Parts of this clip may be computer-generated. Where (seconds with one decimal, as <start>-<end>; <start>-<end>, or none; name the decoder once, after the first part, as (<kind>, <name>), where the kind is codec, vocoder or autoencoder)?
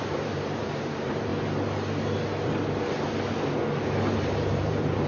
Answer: 0.0-1.3 (vocoder, BigVGAN v2); 4.2-5.1